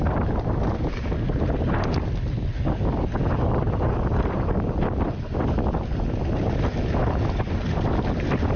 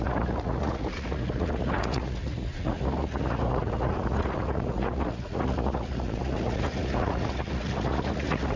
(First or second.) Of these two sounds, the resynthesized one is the second